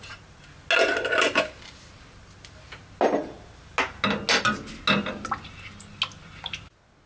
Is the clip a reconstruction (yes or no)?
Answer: no